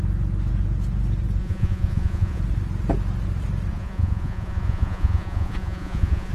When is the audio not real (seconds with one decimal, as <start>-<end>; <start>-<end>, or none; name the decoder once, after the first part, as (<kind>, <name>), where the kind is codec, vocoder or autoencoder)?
1.4-2.4 (vocoder, Vocos); 3.7-6.3